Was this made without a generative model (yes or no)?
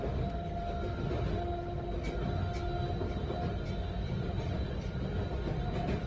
yes